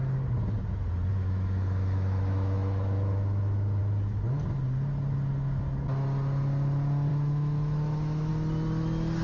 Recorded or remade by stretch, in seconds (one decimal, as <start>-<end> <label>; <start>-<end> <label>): 0.0-1.1 recorded; 1.1-3.8 remade; 3.8-7.1 recorded; 7.1-8.3 remade; 8.3-9.2 recorded